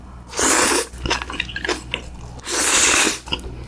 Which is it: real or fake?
real